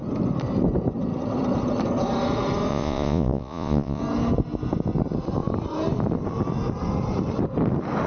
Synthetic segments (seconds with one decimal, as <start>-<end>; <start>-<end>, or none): 2.7-4.0